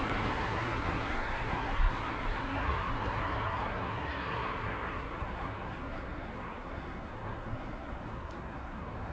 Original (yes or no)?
no